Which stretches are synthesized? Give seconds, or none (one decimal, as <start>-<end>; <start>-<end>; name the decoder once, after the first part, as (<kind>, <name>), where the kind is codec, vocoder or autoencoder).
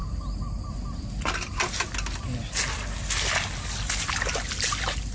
none